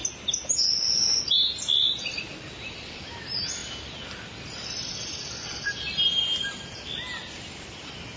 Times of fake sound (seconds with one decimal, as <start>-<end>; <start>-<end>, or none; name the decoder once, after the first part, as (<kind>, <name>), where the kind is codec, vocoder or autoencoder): none